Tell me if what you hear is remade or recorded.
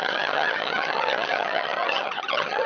remade